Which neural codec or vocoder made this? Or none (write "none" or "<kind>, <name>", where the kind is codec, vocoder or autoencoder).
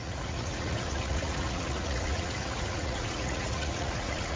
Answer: vocoder, Vocos